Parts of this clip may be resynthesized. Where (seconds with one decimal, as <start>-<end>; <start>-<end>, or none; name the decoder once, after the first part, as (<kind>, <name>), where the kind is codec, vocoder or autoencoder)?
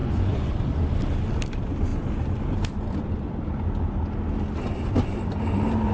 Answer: 0.0-0.5 (vocoder, Vocos)